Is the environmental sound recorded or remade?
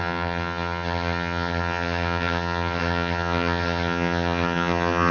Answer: remade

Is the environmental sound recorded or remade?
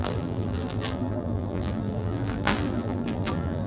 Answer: remade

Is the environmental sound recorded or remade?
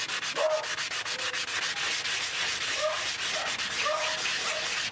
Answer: recorded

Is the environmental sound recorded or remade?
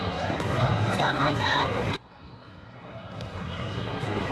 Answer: remade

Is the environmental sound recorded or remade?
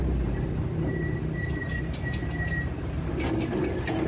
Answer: recorded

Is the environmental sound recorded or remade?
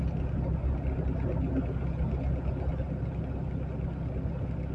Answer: recorded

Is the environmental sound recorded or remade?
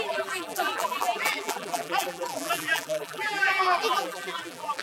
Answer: remade